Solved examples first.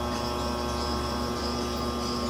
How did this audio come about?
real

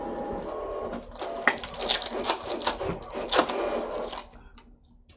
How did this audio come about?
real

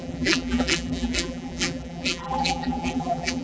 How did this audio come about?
fake